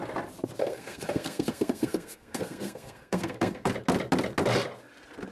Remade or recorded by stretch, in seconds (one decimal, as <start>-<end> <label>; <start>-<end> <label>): 0.0-0.6 recorded; 0.6-3.7 remade; 3.7-5.3 recorded